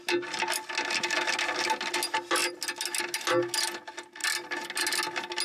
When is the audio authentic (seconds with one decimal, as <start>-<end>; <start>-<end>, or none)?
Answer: 0.0-5.4